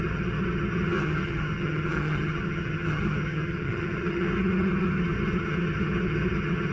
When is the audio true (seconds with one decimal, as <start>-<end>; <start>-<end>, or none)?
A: none